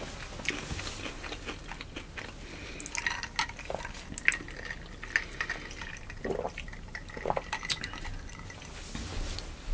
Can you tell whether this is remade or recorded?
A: recorded